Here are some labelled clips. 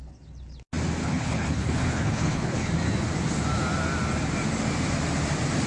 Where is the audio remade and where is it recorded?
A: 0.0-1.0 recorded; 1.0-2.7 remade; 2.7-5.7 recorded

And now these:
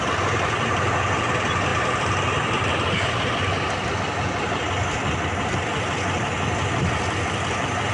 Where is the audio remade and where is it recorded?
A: 0.0-7.9 recorded

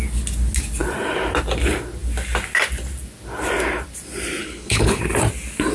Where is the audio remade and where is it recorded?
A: 0.0-4.4 recorded; 4.4-5.0 remade; 5.0-5.7 recorded

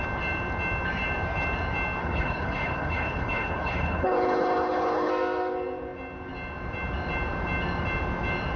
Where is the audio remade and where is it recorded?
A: 0.0-2.0 recorded; 2.0-5.1 remade; 5.1-8.6 recorded

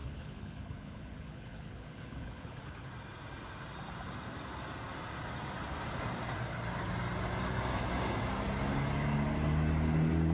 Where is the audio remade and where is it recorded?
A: 0.0-2.9 remade; 2.9-10.3 recorded

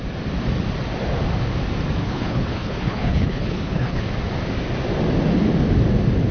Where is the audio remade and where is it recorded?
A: 0.0-2.0 recorded; 2.0-4.0 remade; 4.0-6.3 recorded